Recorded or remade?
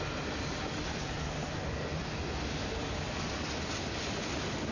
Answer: recorded